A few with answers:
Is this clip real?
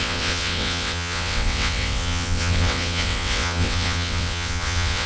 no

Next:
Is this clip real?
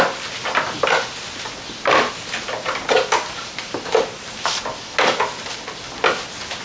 yes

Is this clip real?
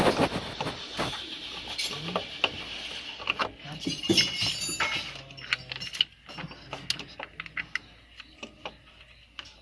yes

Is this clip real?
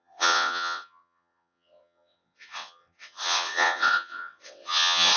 no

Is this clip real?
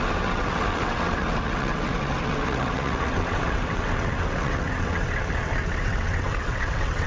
no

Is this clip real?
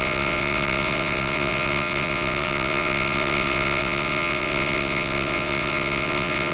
no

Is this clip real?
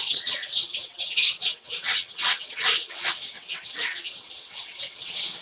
no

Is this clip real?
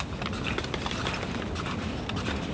yes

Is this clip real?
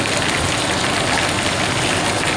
yes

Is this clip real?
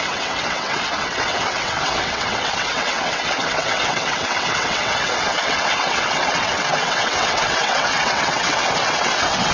no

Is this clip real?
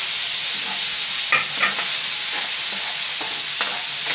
yes